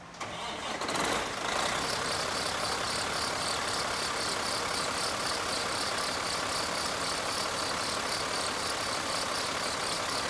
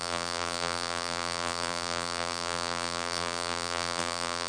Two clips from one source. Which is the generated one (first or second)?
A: second